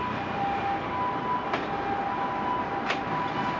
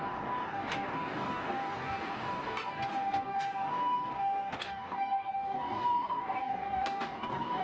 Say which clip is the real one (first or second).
first